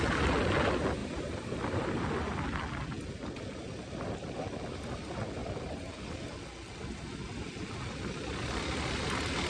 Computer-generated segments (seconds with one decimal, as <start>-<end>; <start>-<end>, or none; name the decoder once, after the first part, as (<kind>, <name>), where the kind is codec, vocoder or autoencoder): 1.0-2.0 (vocoder, BigVGAN v2); 5.4-6.0